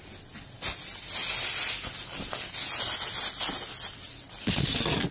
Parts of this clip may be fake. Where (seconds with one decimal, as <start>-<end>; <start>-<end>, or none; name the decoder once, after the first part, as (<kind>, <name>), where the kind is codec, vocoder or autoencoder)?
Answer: none